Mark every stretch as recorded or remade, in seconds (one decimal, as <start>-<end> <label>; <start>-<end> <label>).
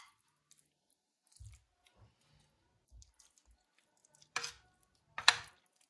0.0-5.9 recorded